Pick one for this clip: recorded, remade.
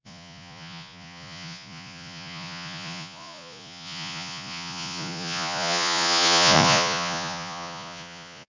remade